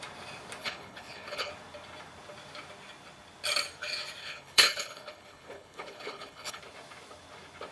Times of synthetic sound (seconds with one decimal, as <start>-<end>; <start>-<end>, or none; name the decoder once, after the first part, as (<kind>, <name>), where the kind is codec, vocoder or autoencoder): 0.6-1.5 (codec, HILCodec); 4.2-6.6